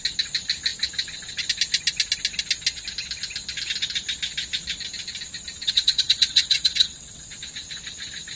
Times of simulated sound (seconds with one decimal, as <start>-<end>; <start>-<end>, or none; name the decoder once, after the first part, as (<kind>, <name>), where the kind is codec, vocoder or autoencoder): 5.6-7.3 (vocoder, WaveNeXt)

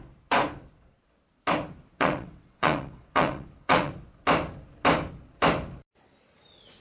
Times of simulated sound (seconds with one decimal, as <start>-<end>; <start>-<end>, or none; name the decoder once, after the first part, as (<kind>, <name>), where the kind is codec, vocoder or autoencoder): 1.9-3.9 (vocoder, WaveNeXt)

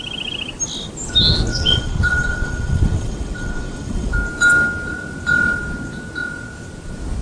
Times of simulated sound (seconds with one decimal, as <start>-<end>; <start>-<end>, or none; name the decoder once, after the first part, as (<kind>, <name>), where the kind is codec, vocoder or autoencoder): 1.5-4.1 (vocoder, WaveNeXt)

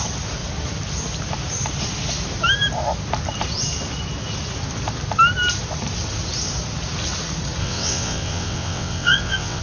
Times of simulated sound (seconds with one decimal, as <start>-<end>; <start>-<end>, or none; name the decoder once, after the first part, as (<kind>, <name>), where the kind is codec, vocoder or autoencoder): 7.6-9.6 (vocoder, WaveNeXt)

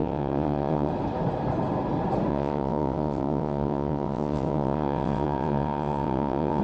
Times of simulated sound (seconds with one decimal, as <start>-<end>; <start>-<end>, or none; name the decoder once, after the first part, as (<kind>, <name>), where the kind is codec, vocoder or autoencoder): 0.0-0.9 (vocoder, WaveNeXt); 2.3-6.6

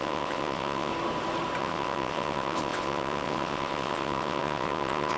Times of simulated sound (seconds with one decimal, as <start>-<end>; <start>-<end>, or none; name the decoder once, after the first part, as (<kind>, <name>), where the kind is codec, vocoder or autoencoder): 0.0-0.9 (vocoder, WaveNeXt); 1.6-5.2

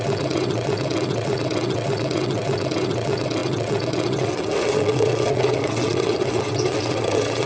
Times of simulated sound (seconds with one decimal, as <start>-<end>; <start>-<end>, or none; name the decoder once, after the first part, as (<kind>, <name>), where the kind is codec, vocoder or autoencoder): 0.0-7.5 (vocoder, WaveNeXt)